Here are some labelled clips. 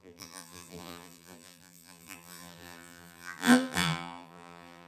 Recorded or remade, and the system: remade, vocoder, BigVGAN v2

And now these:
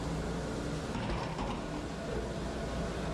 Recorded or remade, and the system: recorded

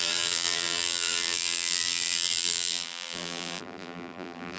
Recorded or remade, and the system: remade, vocoder, BigVGAN v2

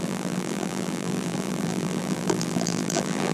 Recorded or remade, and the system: remade, vocoder, BigVGAN v2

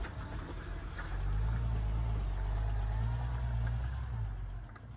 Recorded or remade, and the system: recorded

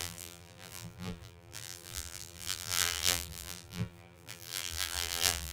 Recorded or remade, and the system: remade, vocoder, BigVGAN v2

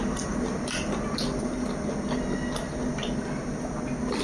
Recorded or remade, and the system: recorded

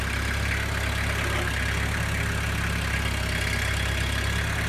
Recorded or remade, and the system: recorded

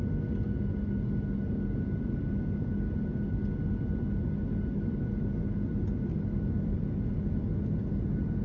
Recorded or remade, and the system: recorded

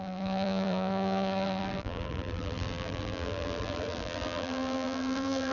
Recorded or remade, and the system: remade, vocoder, BigVGAN v2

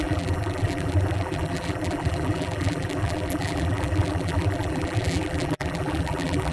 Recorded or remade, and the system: remade, vocoder, BigVGAN v2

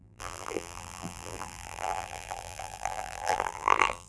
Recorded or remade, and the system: remade, vocoder, BigVGAN v2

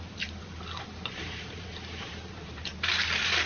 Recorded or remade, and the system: remade, vocoder, BigVGAN v2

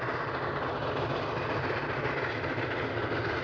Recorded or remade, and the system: recorded